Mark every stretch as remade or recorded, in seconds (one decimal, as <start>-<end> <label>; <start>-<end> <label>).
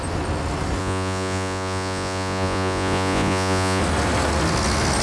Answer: 0.0-0.8 recorded; 0.8-3.8 remade; 3.8-5.0 recorded